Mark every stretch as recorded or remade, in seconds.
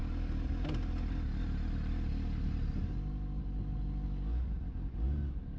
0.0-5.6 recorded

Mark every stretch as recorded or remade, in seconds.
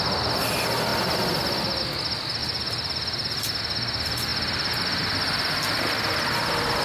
0.0-2.4 recorded; 2.4-3.6 remade; 3.6-4.3 recorded; 4.3-4.8 remade; 4.8-6.8 recorded